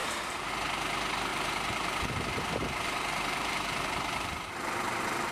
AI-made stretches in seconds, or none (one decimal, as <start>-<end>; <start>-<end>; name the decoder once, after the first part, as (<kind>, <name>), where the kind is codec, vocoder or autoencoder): 0.0-0.5 (vocoder, BigVGAN v2); 1.3-4.5